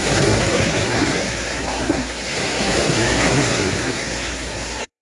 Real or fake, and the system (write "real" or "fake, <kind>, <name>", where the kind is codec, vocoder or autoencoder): fake, codec, SNAC